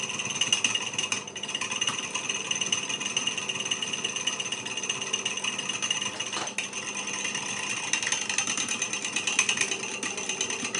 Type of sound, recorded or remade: recorded